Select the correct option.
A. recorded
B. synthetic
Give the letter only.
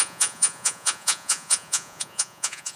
B